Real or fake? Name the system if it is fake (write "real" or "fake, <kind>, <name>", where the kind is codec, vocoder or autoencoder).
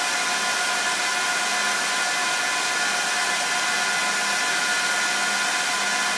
real